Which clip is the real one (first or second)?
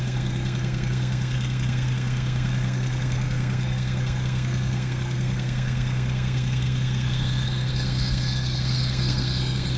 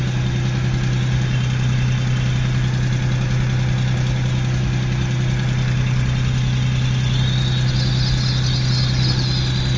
second